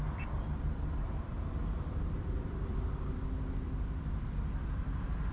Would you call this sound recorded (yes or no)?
no